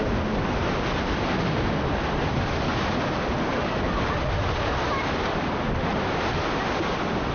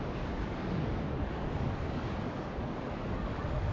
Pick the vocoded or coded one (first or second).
second